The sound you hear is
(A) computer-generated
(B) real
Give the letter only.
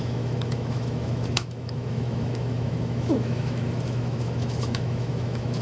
A